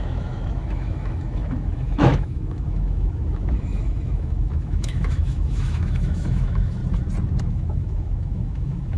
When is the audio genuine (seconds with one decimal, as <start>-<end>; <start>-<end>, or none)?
6.8-7.4

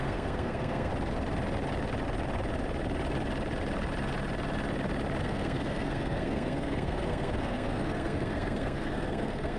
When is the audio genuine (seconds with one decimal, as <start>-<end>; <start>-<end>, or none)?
0.9-5.2

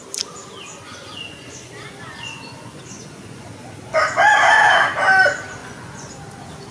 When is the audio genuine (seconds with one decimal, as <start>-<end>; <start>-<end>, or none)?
0.0-0.7; 3.7-5.6; 6.1-6.7

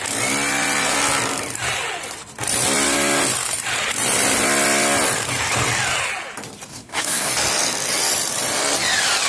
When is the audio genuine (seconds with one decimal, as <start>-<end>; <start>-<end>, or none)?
0.0-6.7; 7.3-9.3

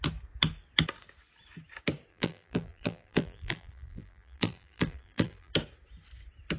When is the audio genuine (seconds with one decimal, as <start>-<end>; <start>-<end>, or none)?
0.0-2.1; 5.5-6.6

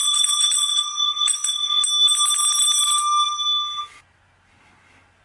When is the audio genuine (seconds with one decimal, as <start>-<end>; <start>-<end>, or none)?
1.8-5.2

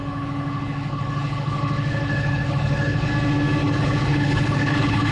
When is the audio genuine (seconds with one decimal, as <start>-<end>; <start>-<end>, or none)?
3.1-3.6